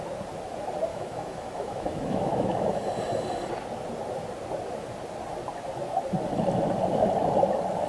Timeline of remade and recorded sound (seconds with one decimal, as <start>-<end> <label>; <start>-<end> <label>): 0.0-0.9 recorded; 0.9-2.8 remade; 2.8-7.9 recorded